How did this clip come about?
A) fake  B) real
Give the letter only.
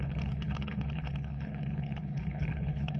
A